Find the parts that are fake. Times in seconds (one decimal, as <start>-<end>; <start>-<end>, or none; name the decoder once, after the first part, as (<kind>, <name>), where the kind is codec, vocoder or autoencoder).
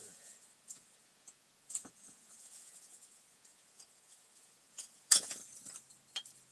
0.0-5.4 (vocoder, Vocos)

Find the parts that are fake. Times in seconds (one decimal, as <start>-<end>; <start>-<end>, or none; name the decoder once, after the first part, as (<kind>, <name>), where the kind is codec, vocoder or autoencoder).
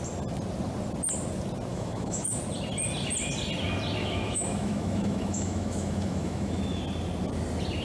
1.7-2.4 (autoencoder, DAC-VAE); 4.0-6.8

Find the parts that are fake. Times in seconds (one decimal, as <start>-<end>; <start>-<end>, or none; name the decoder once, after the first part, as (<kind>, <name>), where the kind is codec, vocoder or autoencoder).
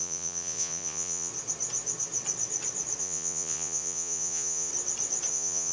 0.0-1.3 (vocoder, Vocos); 3.0-4.7; 5.3-5.7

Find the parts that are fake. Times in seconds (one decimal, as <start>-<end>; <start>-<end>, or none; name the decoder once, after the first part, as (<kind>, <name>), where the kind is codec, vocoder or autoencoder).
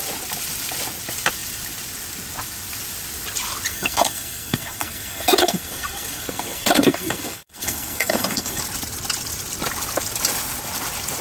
3.7-8.6 (codec, SNAC)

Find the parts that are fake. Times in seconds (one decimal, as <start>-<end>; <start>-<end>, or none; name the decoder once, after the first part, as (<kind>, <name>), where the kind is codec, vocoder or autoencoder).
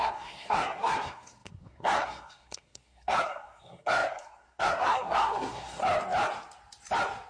0.0-5.8 (codec, SNAC)